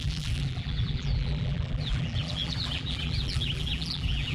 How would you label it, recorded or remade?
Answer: remade